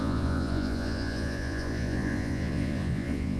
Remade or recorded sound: remade